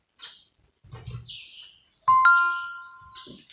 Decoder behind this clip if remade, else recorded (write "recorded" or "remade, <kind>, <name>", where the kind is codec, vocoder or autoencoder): recorded